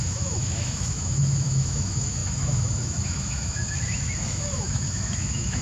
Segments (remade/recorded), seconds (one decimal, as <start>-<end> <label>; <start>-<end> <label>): 0.0-5.6 remade